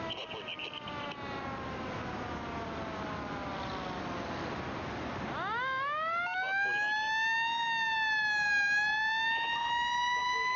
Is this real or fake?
real